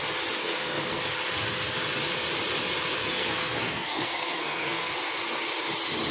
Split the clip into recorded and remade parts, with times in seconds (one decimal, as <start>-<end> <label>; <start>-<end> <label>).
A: 0.0-0.4 recorded; 0.4-1.0 remade; 1.0-3.0 recorded; 3.0-4.9 remade; 4.9-6.1 recorded